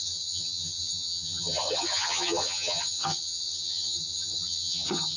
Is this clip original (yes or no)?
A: no